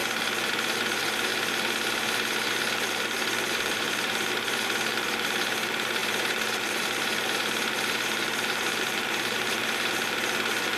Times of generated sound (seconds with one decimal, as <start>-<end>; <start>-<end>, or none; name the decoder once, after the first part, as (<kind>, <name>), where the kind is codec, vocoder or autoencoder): 0.5-1.3 (vocoder, BigVGAN v2); 2.5-10.8

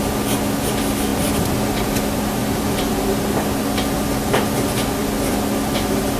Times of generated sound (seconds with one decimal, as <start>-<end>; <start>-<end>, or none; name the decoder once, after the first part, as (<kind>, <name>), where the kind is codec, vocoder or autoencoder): none

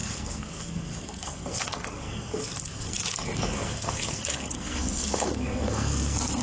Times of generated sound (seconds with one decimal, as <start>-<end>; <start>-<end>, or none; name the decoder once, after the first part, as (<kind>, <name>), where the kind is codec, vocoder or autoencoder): 0.0-6.4 (codec, SNAC)

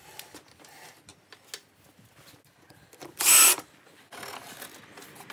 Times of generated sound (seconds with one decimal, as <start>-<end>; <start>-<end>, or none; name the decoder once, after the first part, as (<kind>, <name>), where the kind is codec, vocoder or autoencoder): none

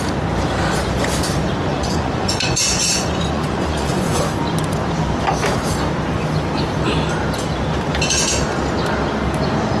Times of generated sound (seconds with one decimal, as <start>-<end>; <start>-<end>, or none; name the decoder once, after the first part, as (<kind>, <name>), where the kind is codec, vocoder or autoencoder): 1.7-4.2 (vocoder, Vocos)

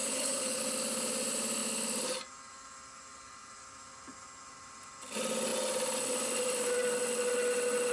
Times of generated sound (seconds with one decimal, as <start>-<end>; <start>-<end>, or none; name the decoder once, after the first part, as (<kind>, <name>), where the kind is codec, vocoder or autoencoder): 0.0-0.6 (codec, HILCodec)

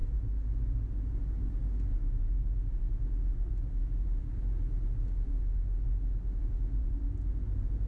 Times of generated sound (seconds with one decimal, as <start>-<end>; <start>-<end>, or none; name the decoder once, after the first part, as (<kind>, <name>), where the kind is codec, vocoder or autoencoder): none